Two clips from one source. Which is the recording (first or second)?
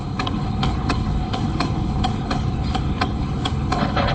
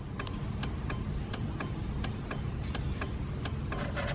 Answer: second